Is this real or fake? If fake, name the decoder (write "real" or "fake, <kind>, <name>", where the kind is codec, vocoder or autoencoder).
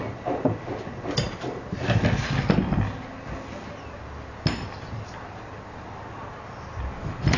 real